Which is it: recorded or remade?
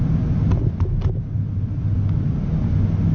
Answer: recorded